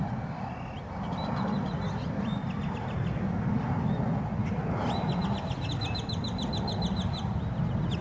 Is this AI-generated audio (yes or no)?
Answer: no